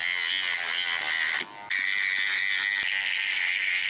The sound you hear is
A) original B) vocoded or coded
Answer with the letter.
A